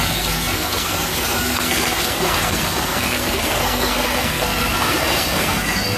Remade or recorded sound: remade